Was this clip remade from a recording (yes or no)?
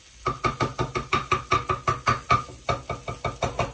no